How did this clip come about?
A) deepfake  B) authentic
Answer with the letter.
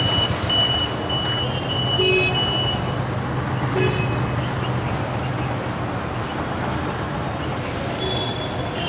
B